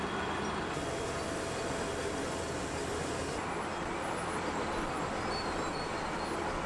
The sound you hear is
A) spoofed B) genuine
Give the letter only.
B